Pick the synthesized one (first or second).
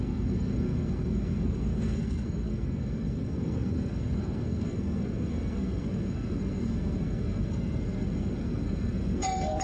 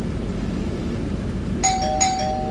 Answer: first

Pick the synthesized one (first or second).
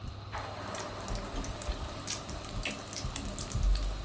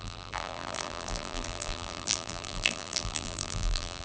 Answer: second